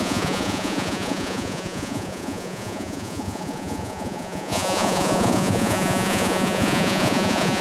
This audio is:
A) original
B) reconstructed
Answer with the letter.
B